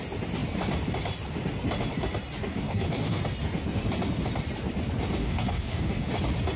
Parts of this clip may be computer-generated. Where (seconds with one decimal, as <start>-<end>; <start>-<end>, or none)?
2.5-3.2; 5.2-6.1